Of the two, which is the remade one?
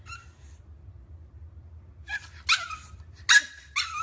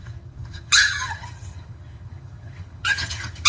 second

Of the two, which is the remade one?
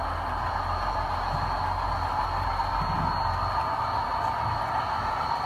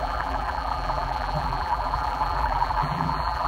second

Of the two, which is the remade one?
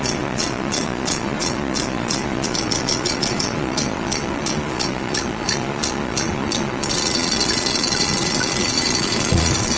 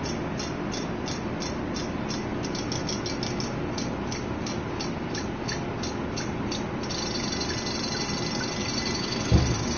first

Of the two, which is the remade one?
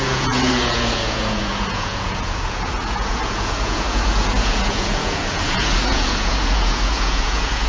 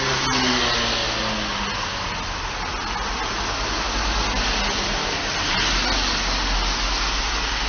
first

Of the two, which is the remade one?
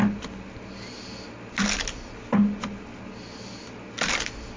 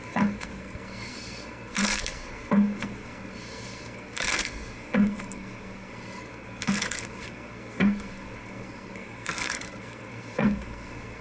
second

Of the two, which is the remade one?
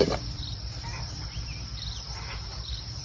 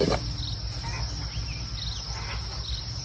first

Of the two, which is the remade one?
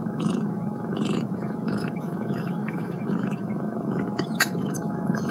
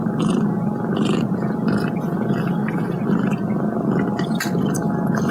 first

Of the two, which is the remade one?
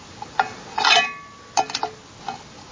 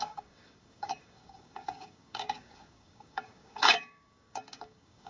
second